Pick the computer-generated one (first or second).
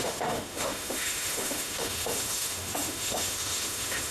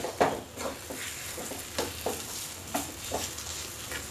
first